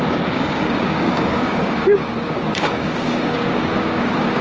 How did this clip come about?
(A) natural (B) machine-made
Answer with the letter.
B